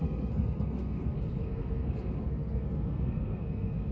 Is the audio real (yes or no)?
no